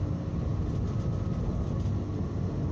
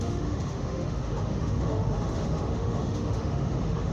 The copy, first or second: second